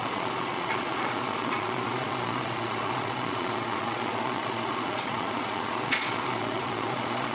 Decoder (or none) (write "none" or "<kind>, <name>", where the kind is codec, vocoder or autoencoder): vocoder, Vocos